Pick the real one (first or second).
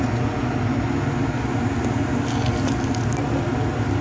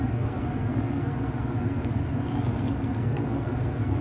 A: first